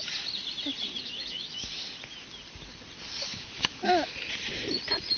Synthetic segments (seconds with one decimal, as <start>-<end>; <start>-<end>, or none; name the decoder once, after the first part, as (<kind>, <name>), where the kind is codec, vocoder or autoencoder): 0.9-1.9 (autoencoder, DAC-VAE); 3.3-4.1